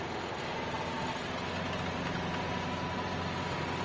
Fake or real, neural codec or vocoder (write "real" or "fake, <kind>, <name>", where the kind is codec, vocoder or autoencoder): real